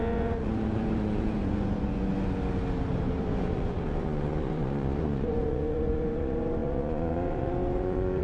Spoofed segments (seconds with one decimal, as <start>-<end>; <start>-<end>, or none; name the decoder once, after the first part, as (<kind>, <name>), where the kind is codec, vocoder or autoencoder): 0.0-2.1 (vocoder, Vocos); 3.0-8.2